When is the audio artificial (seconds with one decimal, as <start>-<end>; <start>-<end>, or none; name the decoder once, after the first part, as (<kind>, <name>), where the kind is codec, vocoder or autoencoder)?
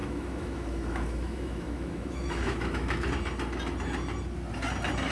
0.0-3.1 (autoencoder, DAC-VAE)